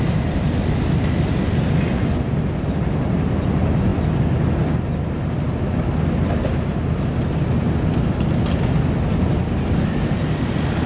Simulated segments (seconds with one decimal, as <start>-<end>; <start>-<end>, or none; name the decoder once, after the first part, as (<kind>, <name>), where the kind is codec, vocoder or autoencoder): none